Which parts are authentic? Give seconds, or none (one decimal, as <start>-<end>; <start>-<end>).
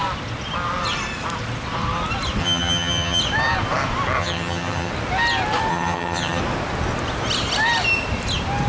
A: 0.0-2.4; 3.2-4.2; 4.9-5.7; 6.4-8.7